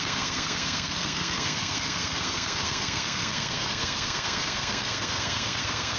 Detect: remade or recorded remade